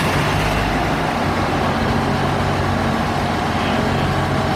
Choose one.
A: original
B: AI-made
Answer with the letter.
A